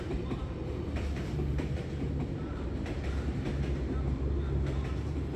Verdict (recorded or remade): remade